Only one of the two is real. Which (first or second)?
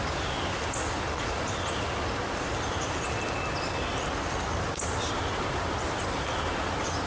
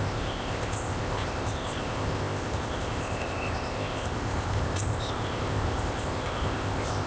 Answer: first